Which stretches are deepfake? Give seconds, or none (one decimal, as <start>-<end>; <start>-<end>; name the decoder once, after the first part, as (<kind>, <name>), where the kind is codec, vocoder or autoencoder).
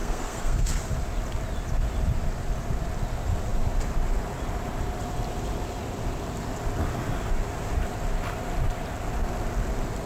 0.0-0.8 (codec, SNAC)